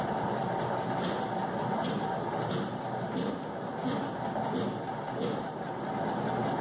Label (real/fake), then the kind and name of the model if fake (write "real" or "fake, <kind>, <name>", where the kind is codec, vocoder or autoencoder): real